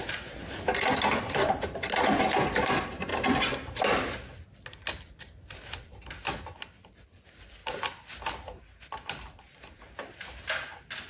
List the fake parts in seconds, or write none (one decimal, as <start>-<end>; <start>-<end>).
none